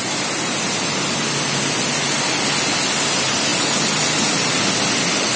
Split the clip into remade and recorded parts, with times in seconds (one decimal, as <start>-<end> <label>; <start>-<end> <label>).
0.0-5.4 recorded